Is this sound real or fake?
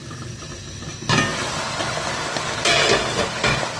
real